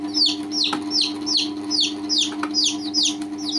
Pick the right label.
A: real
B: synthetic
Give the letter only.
A